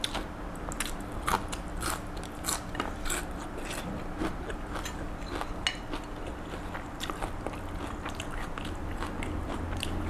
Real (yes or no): yes